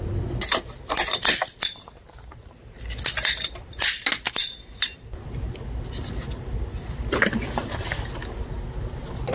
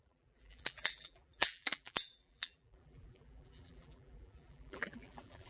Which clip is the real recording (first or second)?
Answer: first